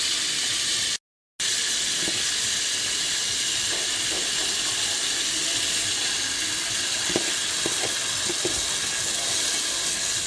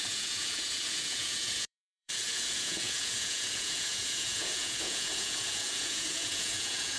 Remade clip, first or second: second